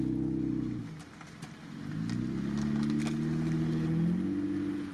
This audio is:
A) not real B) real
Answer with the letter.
B